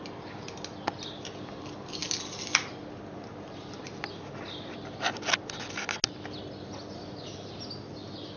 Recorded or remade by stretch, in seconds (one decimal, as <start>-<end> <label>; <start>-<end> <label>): 0.0-8.4 recorded